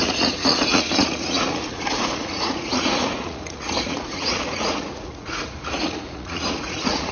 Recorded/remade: remade